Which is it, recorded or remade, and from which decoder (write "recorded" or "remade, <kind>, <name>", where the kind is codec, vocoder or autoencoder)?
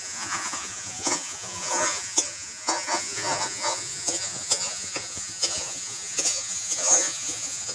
remade, vocoder, Vocos